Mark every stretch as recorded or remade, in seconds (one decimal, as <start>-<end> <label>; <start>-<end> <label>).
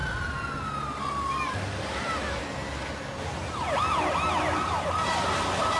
0.0-5.8 recorded